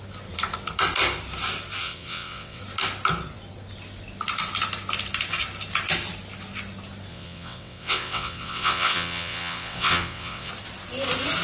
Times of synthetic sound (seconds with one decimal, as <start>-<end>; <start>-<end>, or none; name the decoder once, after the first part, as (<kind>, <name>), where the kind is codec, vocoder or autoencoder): 1.8-2.6 (vocoder, WaveNeXt); 7.1-10.5